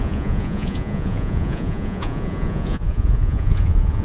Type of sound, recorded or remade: remade